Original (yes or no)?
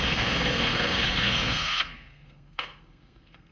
no